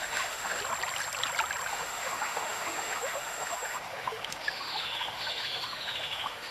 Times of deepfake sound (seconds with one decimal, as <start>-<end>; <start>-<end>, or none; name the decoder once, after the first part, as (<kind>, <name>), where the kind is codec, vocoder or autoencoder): 0.0-0.6 (autoencoder, DAC-VAE); 1.7-6.5

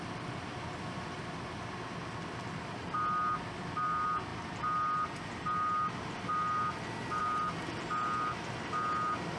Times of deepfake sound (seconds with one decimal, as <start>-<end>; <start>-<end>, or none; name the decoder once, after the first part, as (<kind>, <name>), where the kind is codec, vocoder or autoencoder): none

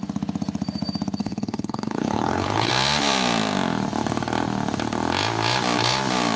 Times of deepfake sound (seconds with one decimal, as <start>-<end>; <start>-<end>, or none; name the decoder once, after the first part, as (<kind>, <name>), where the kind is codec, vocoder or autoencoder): 1.2-2.7 (codec, HILCodec)

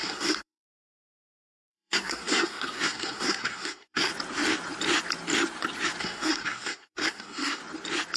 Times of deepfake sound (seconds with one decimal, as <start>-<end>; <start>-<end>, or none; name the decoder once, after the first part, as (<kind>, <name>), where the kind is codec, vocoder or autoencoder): 0.0-4.1 (codec, SNAC); 6.0-7.6

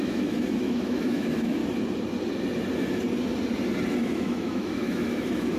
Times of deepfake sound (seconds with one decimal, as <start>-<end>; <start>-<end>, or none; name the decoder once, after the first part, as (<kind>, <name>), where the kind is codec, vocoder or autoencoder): 0.0-1.6 (autoencoder, DAC-VAE); 4.0-5.6